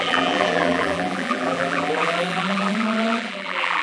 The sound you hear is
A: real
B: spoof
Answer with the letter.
B